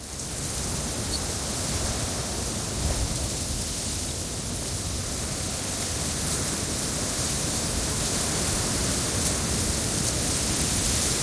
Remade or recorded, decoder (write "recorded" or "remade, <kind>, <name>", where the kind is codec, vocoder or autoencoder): recorded